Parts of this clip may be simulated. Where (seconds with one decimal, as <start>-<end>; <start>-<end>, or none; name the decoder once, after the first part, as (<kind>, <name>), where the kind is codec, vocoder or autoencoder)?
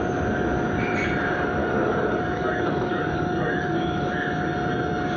1.6-3.8 (codec, DAC)